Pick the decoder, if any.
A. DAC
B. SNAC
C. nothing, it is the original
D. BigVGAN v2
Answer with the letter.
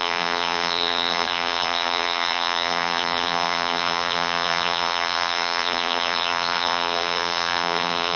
D